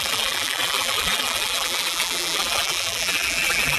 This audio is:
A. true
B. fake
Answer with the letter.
B